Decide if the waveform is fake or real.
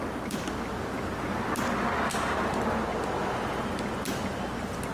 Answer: real